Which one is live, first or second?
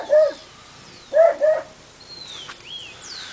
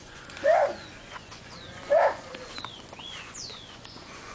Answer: first